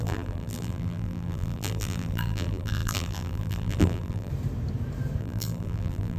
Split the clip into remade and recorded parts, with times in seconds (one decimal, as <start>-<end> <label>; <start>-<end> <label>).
0.0-4.3 remade; 4.3-5.2 recorded; 5.2-6.2 remade